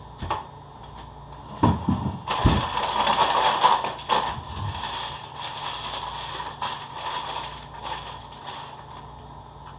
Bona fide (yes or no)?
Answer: yes